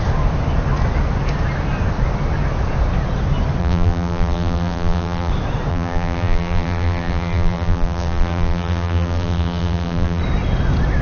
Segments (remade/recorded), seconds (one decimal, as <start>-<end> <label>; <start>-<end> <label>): 0.0-3.6 recorded; 3.6-5.3 remade; 5.3-5.7 recorded; 5.7-10.2 remade; 10.2-11.0 recorded